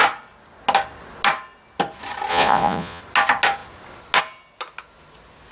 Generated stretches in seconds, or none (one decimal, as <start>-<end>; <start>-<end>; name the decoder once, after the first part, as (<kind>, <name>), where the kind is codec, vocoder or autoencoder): 2.3-3.0 (vocoder, Vocos)